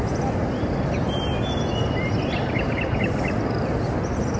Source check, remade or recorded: recorded